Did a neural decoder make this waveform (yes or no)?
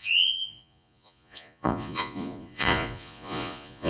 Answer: yes